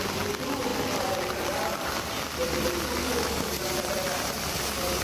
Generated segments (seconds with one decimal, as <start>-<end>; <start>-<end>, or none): 3.0-3.6